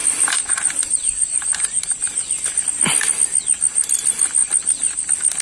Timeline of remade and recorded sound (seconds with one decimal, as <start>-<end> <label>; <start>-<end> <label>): 0.0-2.6 remade; 2.6-4.4 recorded; 4.4-5.0 remade; 5.0-5.4 recorded